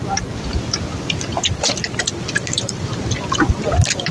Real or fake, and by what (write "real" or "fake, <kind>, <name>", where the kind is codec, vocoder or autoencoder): real